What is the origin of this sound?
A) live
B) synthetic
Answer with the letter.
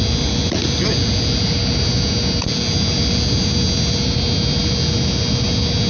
A